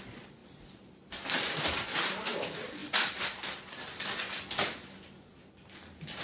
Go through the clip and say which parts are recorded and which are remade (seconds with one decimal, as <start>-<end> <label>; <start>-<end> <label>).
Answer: 0.0-0.4 recorded; 0.4-1.7 remade; 1.7-2.8 recorded; 2.8-3.7 remade; 3.7-5.3 recorded; 5.3-6.2 remade